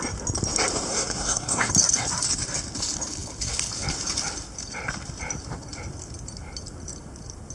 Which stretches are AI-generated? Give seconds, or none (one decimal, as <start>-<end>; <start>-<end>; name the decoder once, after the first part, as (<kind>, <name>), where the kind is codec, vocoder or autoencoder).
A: 0.9-1.7 (codec, SNAC)